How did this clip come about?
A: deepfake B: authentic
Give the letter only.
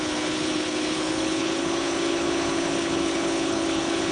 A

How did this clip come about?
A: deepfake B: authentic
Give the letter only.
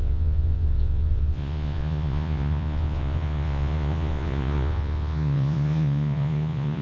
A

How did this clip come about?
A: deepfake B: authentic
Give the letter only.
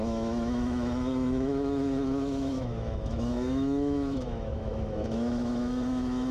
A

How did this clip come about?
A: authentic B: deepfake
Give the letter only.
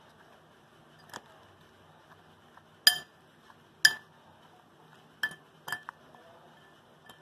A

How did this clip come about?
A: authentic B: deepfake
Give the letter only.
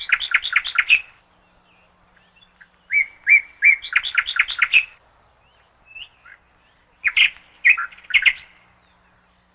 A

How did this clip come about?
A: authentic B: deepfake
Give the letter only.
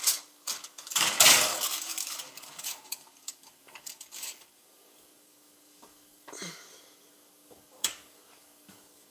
B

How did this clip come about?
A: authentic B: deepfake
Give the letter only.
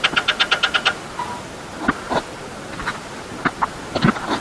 A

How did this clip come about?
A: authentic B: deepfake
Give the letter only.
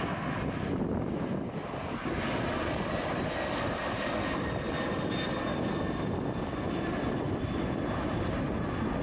A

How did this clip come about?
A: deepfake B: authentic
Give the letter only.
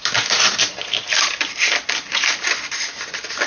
B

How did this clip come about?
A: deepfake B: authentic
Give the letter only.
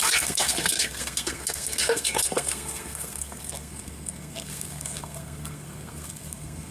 A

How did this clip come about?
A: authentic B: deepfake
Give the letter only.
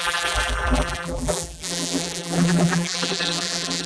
B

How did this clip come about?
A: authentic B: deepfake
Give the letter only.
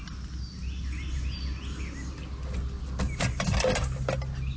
A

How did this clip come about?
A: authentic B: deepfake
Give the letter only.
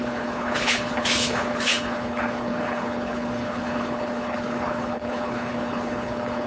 B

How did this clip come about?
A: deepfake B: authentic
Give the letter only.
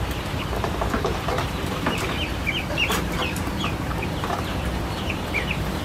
A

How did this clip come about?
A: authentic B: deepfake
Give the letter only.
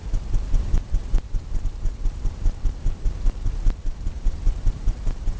B